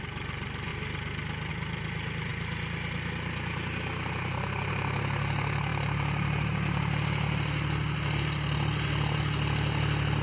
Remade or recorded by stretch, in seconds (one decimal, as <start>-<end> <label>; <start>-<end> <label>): 0.0-10.2 recorded